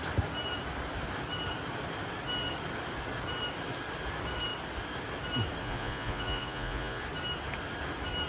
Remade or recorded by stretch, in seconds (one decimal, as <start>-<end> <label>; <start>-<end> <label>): 0.0-5.6 recorded; 5.6-7.0 remade; 7.0-8.3 recorded